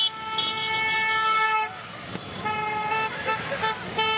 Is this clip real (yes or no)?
yes